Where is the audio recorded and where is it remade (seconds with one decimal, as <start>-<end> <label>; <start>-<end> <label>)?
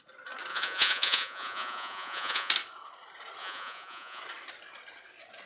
0.0-0.5 recorded; 0.5-2.5 remade; 2.5-3.4 recorded; 3.4-4.2 remade; 4.2-5.5 recorded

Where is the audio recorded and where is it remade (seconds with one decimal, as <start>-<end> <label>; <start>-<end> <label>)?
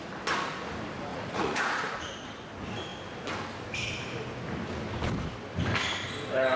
0.0-1.1 recorded; 1.1-2.1 remade; 2.1-6.6 recorded